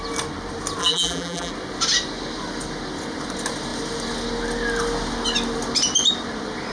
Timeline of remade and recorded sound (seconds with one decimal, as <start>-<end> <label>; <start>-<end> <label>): 0.0-0.8 recorded; 0.8-1.5 remade; 1.5-6.7 recorded